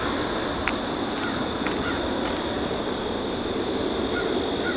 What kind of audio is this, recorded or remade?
recorded